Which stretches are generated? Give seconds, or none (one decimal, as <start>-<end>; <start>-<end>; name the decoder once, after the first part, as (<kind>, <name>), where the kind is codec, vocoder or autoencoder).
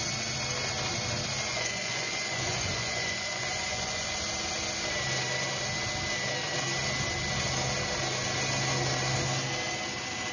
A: 1.5-4.1 (vocoder, Vocos)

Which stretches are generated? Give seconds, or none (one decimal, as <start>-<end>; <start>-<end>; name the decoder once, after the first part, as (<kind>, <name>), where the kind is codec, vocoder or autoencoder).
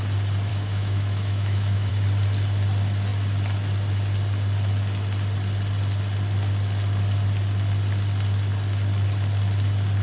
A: 0.5-1.9 (autoencoder, DAC-VAE)